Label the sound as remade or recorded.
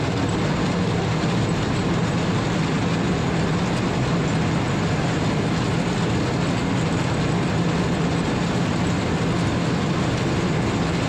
recorded